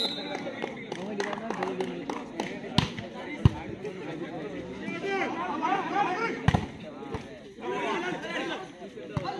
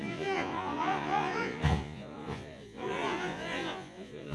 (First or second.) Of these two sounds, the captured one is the first